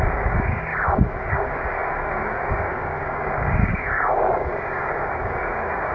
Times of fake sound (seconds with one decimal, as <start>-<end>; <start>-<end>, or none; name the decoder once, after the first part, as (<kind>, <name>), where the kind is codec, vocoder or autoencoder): 0.0-0.7 (codec, DAC); 1.3-5.9